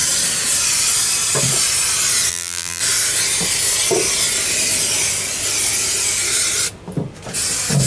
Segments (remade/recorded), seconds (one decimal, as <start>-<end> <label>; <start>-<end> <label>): 0.0-2.3 recorded; 2.3-2.8 remade; 2.8-7.9 recorded